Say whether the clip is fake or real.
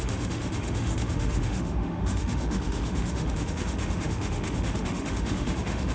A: fake